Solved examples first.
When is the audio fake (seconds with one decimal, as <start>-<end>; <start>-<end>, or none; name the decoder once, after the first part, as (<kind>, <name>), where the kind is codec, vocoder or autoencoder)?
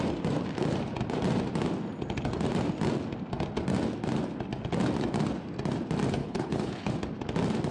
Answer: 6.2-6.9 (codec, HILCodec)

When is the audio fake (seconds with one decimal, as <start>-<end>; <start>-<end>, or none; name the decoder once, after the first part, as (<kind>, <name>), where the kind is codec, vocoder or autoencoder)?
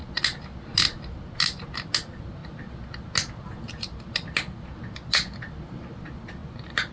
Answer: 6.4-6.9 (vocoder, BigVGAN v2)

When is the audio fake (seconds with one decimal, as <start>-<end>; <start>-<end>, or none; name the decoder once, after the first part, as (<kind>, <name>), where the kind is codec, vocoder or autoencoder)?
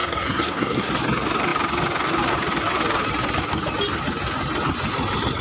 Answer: 0.0-0.9 (codec, SNAC)